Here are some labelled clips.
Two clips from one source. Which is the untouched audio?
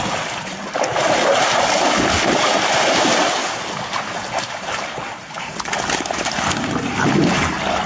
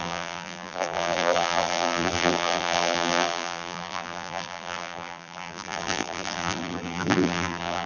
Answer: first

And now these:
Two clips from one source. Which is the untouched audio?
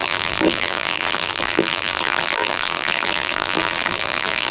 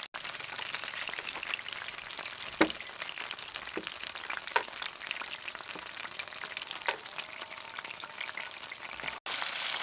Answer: second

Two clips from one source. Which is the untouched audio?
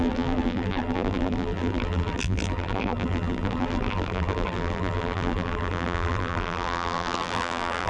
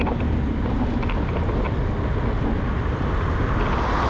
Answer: second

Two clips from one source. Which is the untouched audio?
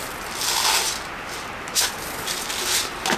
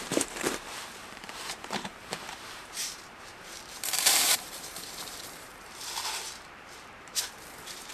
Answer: first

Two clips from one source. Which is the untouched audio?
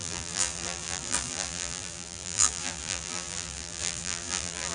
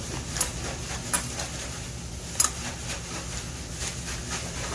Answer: second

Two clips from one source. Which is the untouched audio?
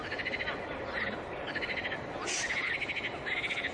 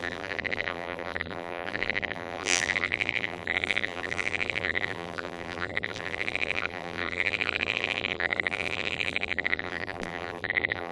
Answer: first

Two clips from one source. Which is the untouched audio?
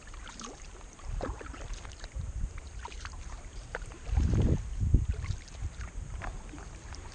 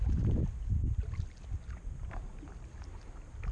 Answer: second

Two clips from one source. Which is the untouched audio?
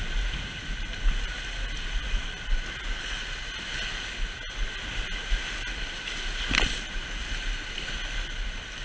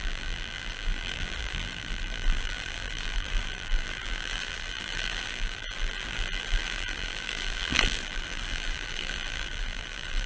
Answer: first